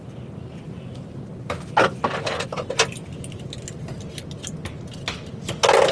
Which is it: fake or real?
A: real